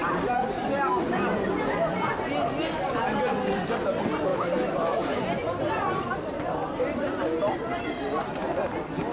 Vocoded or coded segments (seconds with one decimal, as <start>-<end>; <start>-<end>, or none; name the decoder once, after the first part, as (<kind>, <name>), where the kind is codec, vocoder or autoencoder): 4.3-5.2 (autoencoder, DAC-VAE)